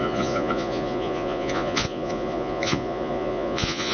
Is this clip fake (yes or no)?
yes